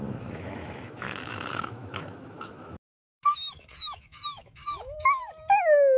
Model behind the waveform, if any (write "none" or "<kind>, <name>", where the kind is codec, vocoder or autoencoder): autoencoder, DAC-VAE